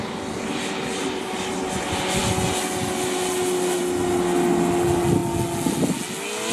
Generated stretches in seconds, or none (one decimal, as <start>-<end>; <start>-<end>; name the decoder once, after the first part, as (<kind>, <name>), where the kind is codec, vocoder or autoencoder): none